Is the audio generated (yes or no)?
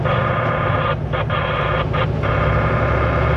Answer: no